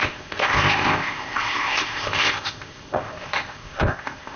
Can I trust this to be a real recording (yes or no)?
no